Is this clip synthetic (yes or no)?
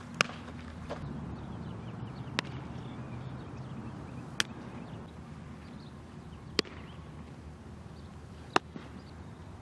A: no